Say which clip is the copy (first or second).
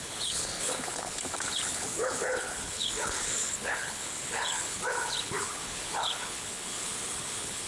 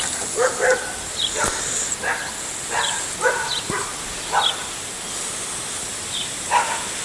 first